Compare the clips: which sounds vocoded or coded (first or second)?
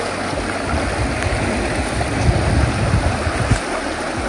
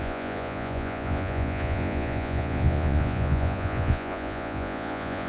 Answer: second